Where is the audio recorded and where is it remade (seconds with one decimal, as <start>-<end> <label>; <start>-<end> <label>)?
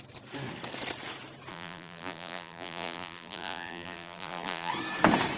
0.0-1.5 recorded; 1.5-4.7 remade; 4.7-5.4 recorded